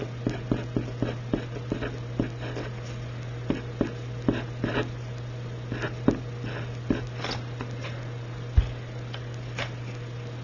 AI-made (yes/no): no